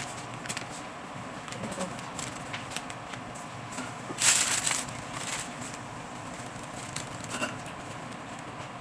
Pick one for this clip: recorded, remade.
recorded